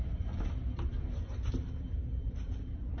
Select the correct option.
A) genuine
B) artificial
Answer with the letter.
A